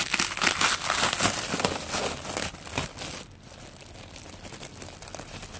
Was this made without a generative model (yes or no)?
yes